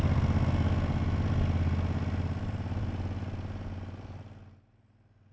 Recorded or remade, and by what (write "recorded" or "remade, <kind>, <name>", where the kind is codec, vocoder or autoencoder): recorded